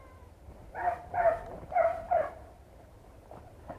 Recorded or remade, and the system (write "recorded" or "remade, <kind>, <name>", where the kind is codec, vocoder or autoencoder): remade, vocoder, BigVGAN v2